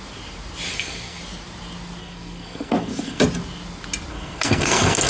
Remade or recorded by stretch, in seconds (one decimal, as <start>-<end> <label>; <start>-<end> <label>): 0.0-0.7 recorded; 0.7-1.2 remade; 1.2-2.0 recorded; 2.0-3.2 remade; 3.2-4.1 recorded; 4.1-5.1 remade